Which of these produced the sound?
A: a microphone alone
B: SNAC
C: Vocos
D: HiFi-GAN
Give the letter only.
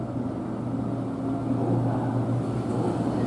A